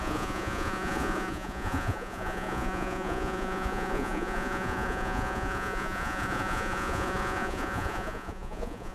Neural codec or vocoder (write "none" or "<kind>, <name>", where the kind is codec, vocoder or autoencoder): vocoder, Vocos